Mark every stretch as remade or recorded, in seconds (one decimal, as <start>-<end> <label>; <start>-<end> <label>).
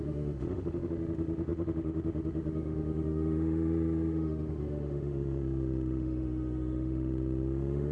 0.0-7.9 remade